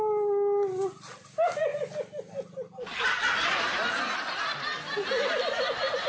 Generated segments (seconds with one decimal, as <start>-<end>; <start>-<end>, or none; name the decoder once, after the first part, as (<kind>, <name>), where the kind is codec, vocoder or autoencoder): none